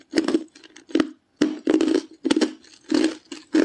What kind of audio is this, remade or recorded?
recorded